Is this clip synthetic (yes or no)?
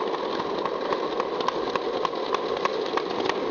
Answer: no